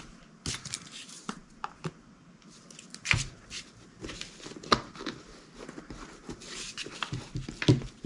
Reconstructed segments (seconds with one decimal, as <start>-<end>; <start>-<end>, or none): none